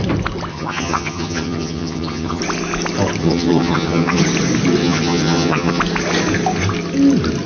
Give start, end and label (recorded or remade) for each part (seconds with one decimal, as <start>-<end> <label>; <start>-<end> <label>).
0.0-0.5 recorded; 0.5-2.4 remade; 2.4-3.2 recorded; 3.2-4.2 remade; 4.2-4.8 recorded; 4.8-5.8 remade; 5.8-7.5 recorded